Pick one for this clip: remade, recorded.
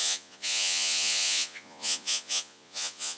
remade